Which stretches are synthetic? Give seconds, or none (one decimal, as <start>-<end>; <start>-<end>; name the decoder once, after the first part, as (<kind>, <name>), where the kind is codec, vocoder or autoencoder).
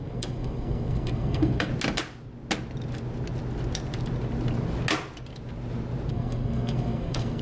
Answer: 0.0-1.7 (codec, SNAC); 6.1-7.4